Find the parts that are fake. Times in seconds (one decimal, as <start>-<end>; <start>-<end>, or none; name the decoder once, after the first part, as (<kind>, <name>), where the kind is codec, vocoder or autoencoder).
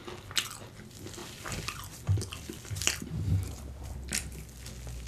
1.2-4.3 (vocoder, BigVGAN v2)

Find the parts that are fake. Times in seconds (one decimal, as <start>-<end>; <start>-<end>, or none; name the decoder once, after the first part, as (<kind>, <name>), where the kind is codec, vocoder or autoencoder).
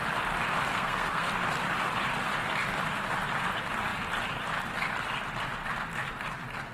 0.7-1.3 (codec, SNAC)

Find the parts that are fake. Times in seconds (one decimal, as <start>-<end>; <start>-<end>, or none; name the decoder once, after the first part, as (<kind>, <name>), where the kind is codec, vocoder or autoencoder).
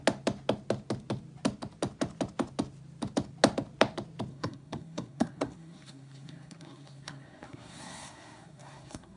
4.3-9.2 (codec, SNAC)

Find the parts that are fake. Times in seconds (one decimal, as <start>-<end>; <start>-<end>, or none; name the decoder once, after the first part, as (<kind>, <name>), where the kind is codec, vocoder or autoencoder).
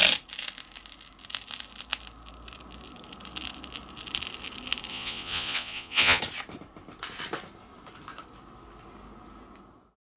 4.9-6.2 (vocoder, Vocos)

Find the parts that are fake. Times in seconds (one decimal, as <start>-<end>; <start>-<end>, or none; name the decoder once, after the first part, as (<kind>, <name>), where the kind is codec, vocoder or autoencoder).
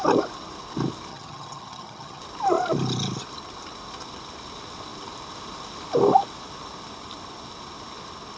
1.1-2.2 (vocoder, HiFi-GAN)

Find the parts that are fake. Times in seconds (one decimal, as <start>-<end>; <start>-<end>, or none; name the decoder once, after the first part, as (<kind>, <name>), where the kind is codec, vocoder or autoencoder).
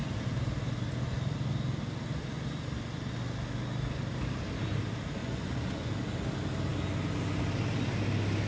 5.2-5.9 (vocoder, Vocos)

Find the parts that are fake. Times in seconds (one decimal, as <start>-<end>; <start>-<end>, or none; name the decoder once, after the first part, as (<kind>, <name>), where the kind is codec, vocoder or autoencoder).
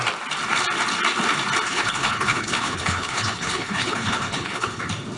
1.7-4.8 (codec, HILCodec)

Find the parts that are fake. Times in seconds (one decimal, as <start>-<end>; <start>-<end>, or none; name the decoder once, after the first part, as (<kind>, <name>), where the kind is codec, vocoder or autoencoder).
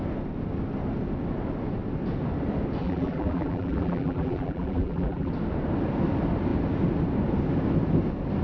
2.8-5.3 (vocoder, BigVGAN v2)